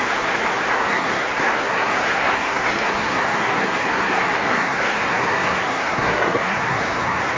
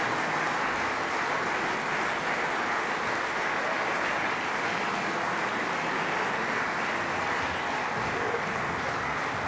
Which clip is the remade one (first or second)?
first